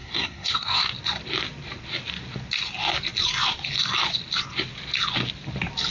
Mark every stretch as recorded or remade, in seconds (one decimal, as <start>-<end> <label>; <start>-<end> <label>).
0.0-0.9 remade; 0.9-5.9 recorded